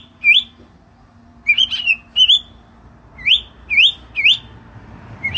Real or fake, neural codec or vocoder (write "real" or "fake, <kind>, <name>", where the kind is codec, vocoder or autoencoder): real